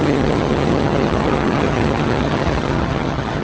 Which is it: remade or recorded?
remade